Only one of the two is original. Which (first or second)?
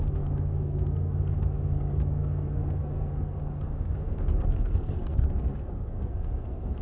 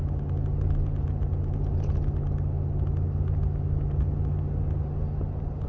second